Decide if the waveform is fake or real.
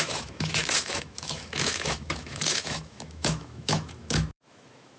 fake